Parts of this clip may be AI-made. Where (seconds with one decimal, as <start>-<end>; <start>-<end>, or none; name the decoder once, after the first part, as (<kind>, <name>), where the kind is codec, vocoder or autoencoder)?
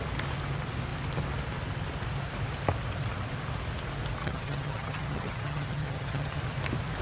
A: 4.2-6.4 (vocoder, HiFi-GAN)